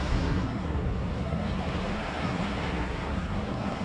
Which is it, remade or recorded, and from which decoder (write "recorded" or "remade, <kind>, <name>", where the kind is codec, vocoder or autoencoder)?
remade, codec, SNAC